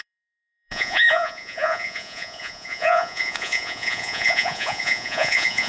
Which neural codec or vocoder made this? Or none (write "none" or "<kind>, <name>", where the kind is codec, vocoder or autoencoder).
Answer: vocoder, Vocos